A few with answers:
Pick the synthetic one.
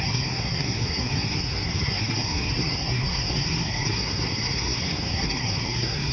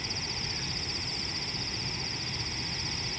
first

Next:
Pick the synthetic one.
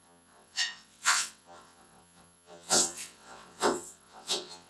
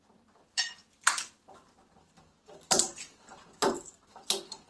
first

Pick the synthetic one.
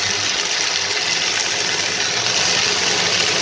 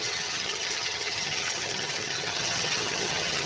second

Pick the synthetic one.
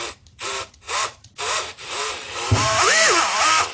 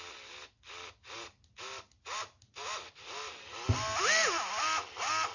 first